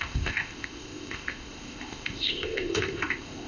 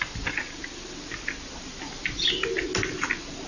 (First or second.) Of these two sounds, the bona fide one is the second